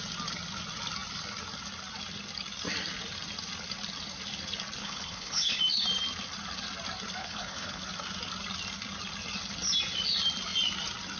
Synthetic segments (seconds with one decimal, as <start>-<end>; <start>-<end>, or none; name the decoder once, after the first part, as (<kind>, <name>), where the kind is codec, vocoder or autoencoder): 4.8-5.6 (codec, HILCodec); 7.2-7.8